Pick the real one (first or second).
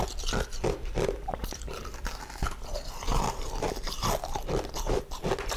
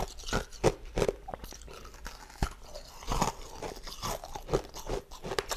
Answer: second